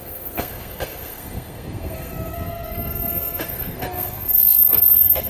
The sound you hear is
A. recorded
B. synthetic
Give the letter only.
B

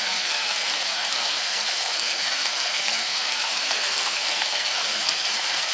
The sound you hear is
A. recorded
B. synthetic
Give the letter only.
B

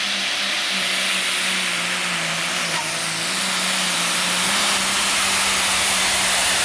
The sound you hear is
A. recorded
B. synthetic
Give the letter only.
A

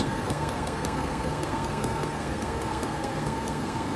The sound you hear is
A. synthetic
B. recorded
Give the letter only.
A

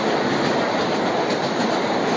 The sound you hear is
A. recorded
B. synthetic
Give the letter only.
A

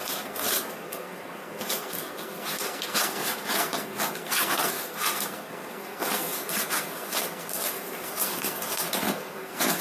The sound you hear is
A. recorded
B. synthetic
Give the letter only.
B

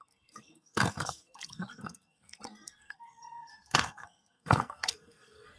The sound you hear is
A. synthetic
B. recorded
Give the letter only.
A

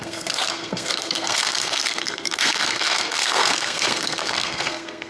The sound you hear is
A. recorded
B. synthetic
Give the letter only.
B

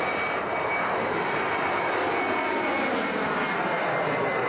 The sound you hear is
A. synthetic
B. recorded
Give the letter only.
B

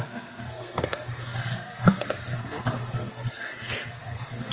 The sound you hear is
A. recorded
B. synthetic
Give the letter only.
B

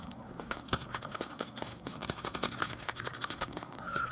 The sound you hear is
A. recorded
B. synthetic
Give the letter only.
B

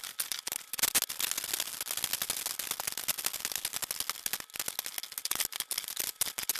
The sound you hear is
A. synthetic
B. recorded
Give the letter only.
B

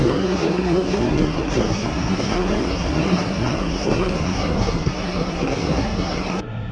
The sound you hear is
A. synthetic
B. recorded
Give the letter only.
A